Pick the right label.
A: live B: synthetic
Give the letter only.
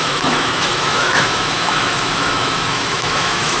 B